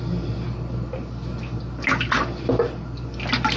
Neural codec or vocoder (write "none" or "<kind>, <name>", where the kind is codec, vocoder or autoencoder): none